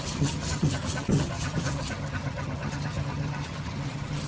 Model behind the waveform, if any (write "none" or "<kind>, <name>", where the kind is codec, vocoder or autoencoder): vocoder, HiFi-GAN